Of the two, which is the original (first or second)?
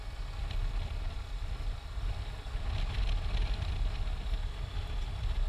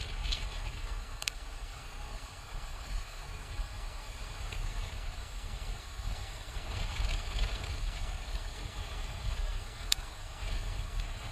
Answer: first